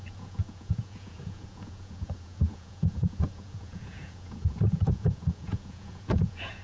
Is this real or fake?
fake